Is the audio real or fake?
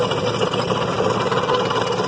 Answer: real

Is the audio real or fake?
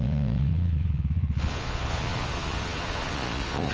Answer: fake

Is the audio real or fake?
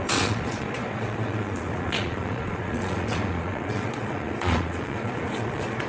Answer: fake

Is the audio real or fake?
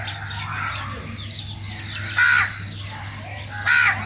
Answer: real